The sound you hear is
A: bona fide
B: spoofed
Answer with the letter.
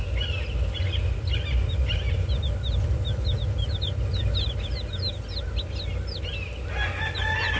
A